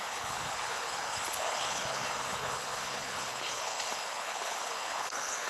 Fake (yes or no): yes